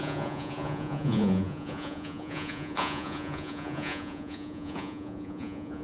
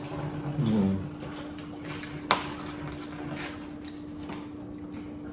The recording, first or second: second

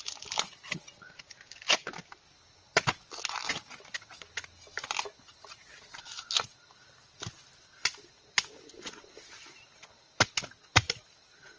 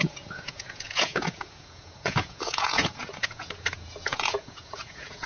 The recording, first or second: first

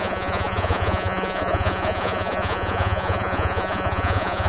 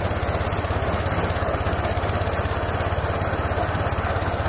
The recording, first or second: second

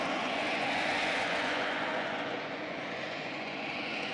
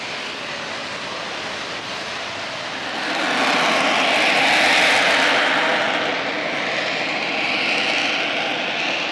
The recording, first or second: second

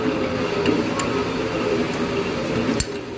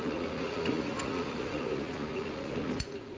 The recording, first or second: first